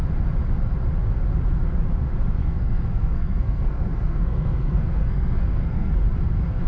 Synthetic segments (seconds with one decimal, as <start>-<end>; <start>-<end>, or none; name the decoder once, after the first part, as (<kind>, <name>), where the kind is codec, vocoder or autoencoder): 2.4-5.9 (codec, SNAC)